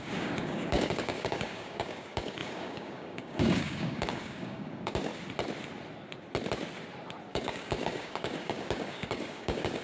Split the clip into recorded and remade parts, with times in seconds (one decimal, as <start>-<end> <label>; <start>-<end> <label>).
0.0-5.1 remade; 5.1-7.3 recorded; 7.3-9.8 remade